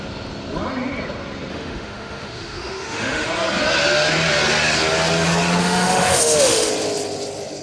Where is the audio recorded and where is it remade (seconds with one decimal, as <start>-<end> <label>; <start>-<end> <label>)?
0.0-1.5 recorded; 1.5-3.3 remade; 3.3-5.6 recorded; 5.6-6.7 remade; 6.7-7.6 recorded

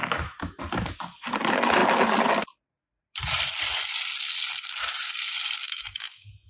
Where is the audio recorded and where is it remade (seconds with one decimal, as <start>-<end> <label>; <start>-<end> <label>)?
0.0-0.6 remade; 0.6-5.6 recorded; 5.6-6.5 remade